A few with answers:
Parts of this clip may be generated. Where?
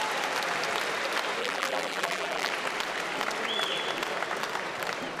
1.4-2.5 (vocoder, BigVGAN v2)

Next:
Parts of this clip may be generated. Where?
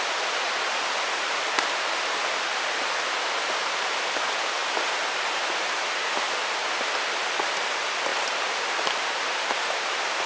4.6-7.0 (vocoder, BigVGAN v2); 8.1-10.3